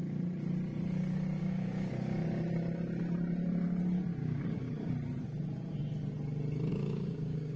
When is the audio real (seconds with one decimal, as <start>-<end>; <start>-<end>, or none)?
0.0-1.4; 1.9-4.2; 4.9-6.7